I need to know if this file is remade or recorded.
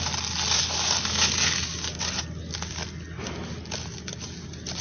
recorded